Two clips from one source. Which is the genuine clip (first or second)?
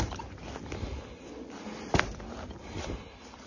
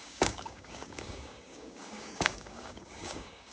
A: first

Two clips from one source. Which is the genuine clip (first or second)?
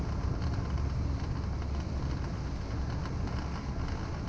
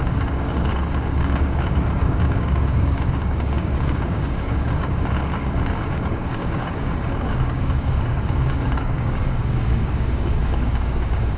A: first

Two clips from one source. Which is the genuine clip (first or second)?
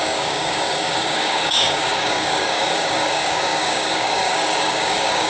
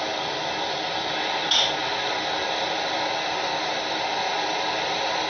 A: second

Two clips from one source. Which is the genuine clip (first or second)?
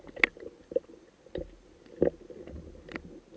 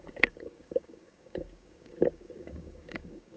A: first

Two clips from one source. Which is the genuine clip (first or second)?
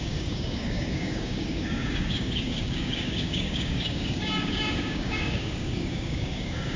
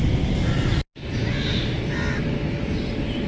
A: second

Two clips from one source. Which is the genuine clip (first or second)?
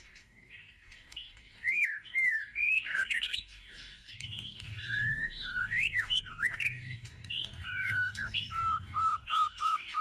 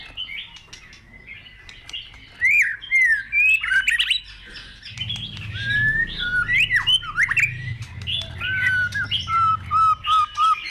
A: second